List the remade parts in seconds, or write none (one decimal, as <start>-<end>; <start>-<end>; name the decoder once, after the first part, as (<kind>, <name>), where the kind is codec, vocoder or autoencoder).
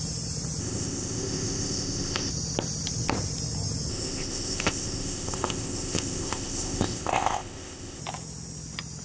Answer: 0.6-2.3 (codec, ZipCodec); 3.9-8.0